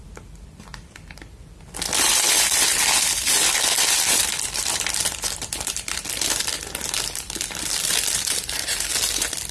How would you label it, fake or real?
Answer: fake